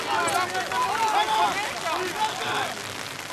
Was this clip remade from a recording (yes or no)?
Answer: no